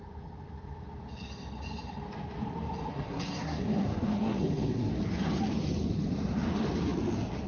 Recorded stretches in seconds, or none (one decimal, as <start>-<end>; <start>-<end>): 0.0-2.9; 4.9-7.5